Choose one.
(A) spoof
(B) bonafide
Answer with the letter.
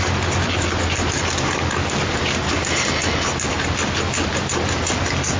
B